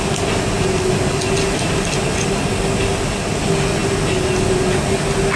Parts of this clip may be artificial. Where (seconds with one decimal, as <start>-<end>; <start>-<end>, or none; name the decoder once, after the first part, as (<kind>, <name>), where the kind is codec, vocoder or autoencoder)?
none